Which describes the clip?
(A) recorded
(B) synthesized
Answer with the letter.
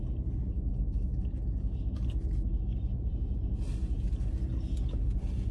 A